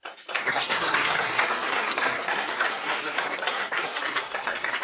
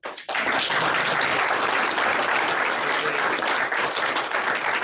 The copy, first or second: first